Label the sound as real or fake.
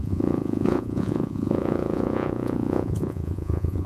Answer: fake